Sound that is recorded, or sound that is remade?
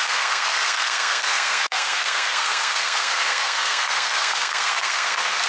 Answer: remade